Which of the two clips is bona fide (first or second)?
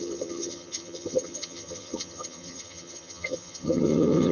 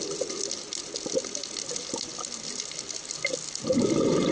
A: second